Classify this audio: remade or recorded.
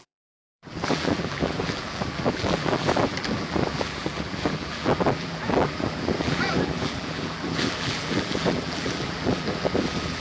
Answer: remade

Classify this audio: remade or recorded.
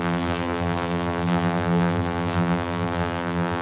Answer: remade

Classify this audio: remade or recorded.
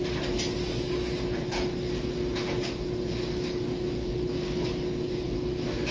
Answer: recorded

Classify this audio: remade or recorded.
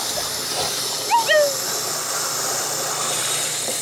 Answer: recorded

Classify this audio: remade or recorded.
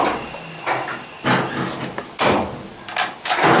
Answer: recorded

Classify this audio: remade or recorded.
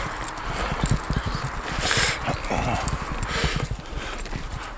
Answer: recorded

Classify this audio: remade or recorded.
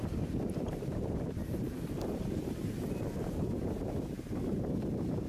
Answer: remade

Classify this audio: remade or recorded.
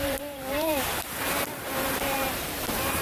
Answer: remade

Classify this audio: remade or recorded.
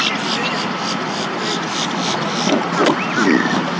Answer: recorded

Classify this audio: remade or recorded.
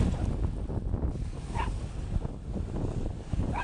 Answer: recorded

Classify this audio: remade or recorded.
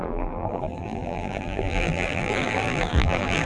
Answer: remade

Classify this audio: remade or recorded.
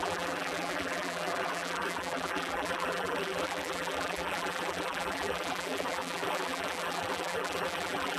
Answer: remade